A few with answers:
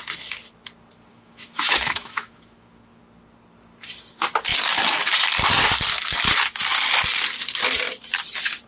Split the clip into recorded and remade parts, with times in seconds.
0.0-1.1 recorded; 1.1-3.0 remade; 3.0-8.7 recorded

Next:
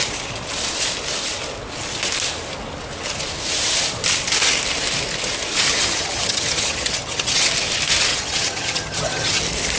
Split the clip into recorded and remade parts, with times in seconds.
0.0-5.7 recorded; 5.7-7.5 remade; 7.5-8.1 recorded; 8.1-9.4 remade; 9.4-9.8 recorded

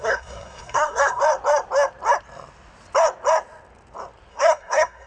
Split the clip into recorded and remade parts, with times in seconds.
0.0-1.2 remade; 1.2-4.3 recorded; 4.3-5.1 remade